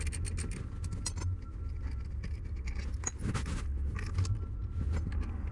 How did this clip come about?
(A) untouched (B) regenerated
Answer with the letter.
A